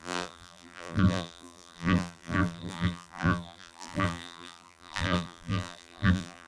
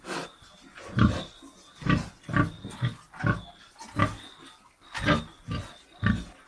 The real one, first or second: second